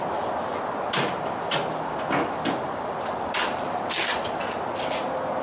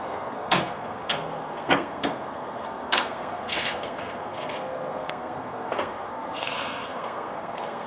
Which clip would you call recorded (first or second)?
first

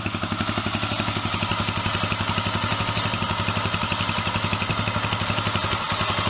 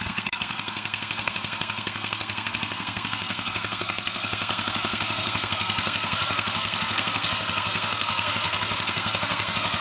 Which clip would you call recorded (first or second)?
first